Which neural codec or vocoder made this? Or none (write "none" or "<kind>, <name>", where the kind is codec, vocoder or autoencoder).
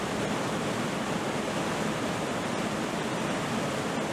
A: none